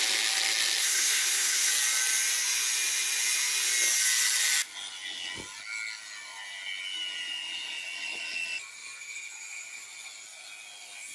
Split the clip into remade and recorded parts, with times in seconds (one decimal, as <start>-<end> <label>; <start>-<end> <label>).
0.0-0.8 recorded; 0.8-1.7 remade; 1.7-11.1 recorded